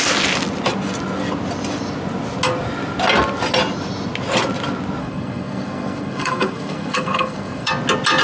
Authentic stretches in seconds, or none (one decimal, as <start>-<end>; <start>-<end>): 0.0-5.0; 7.7-8.2